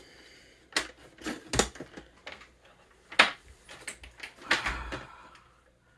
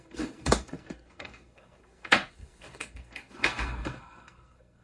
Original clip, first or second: first